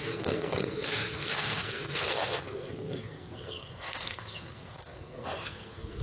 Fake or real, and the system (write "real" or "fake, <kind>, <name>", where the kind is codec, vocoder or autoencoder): fake, codec, SNAC